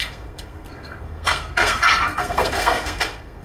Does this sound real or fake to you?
fake